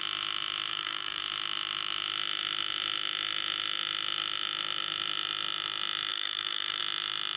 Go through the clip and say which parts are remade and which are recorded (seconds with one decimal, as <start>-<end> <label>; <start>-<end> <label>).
0.0-0.7 recorded; 0.7-1.2 remade; 1.2-6.1 recorded; 6.1-6.8 remade; 6.8-7.4 recorded